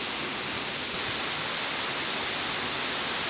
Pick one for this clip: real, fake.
real